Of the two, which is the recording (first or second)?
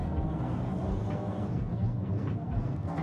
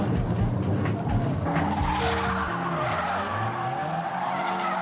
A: second